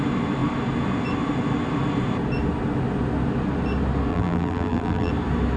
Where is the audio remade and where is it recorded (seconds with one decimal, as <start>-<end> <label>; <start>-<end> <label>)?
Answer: 0.0-4.1 recorded; 4.1-5.1 remade; 5.1-5.6 recorded